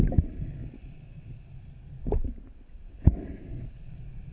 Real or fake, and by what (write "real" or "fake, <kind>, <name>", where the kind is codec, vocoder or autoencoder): real